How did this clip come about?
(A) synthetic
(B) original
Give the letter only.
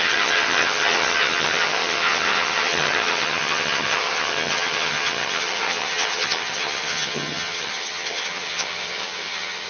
A